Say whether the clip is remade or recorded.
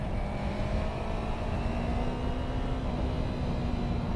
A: recorded